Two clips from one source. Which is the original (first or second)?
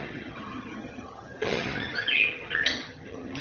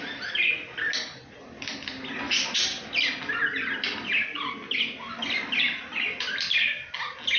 second